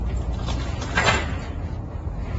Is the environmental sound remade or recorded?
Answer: remade